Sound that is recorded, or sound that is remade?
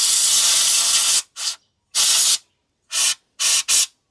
recorded